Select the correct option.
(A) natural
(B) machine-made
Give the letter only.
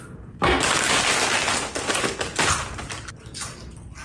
A